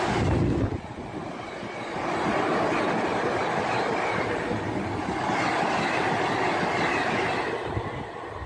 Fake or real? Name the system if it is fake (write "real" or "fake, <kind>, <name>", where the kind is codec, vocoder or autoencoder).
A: real